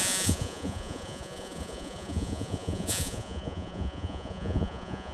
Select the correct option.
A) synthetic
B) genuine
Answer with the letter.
A